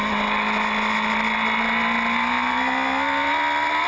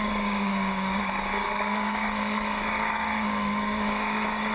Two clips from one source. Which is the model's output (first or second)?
second